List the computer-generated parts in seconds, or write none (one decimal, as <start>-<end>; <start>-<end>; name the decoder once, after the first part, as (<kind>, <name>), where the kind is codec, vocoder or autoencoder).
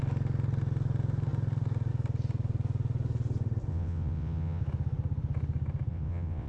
3.7-4.6 (vocoder, WaveNeXt); 5.9-6.5